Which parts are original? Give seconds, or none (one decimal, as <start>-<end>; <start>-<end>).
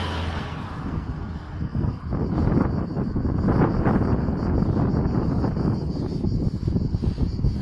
2.0-7.6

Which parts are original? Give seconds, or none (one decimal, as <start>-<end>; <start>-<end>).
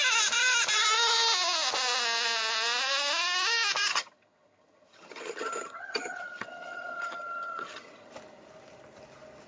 0.0-3.9; 8.1-9.5